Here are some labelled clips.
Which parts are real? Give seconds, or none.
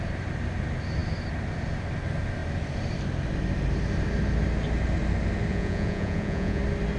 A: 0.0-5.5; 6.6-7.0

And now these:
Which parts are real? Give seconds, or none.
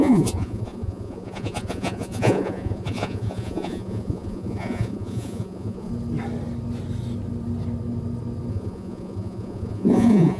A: 5.9-8.5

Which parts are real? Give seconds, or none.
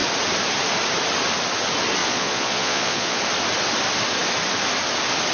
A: 0.0-2.0; 3.2-5.3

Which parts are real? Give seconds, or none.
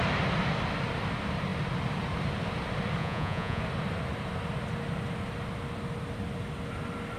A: 0.0-3.0; 3.6-7.2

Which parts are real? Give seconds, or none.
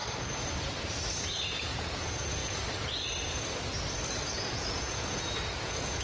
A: 0.0-1.5; 2.4-4.1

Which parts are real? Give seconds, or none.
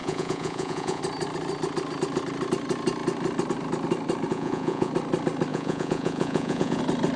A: 1.0-4.3; 4.9-5.5; 6.8-7.2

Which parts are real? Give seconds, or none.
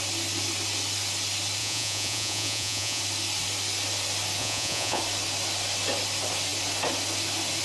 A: 0.0-1.6; 3.0-4.4; 5.0-7.6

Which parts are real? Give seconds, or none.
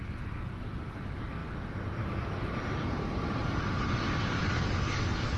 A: 0.0-5.4